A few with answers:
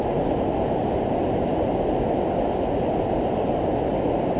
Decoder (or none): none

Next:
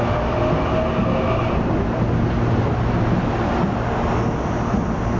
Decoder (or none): none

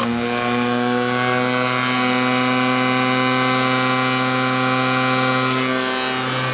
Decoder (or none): none